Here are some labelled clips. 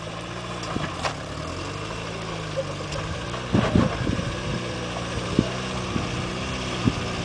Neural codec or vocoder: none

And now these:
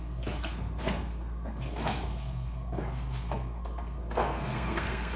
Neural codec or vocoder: codec, SNAC